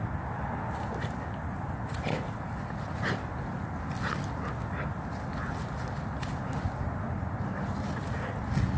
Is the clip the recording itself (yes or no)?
yes